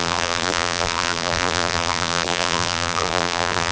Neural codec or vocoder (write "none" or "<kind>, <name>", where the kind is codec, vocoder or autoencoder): vocoder, BigVGAN v2